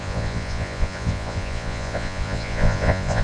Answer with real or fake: fake